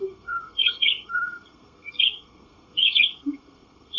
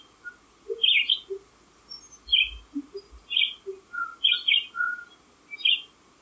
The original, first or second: second